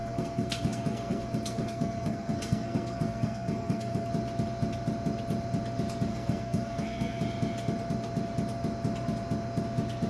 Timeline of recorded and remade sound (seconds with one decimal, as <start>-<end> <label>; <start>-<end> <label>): 0.0-4.1 remade; 4.1-6.1 recorded; 6.1-7.2 remade; 7.2-10.1 recorded